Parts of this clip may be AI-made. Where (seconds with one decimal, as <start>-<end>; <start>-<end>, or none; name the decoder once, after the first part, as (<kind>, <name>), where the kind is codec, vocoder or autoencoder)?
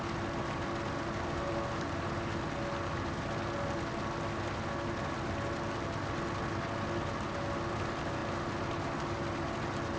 none